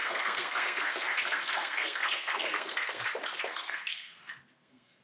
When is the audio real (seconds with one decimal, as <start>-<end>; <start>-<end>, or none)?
3.0-3.4